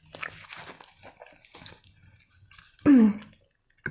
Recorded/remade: recorded